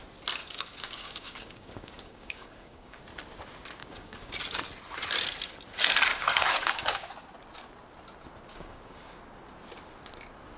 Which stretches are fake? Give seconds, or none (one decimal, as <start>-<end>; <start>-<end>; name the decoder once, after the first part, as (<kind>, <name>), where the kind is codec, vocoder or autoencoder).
0.4-3.0 (codec, DAC); 3.8-4.4; 6.1-7.1; 8.5-9.2